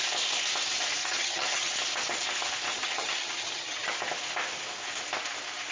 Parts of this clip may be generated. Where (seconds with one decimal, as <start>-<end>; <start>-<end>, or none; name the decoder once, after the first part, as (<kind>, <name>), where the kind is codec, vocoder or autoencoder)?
1.0-1.7 (vocoder, HiFi-GAN); 2.7-3.9